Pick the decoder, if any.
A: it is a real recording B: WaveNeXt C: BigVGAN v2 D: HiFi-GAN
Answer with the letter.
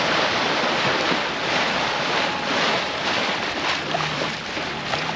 C